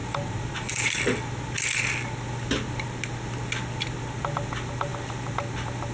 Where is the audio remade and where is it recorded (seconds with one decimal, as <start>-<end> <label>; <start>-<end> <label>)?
0.0-5.9 recorded